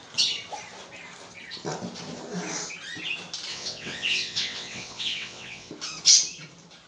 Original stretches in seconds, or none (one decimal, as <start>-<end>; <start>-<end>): 0.0-3.5; 5.7-6.9